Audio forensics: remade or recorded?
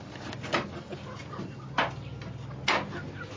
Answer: recorded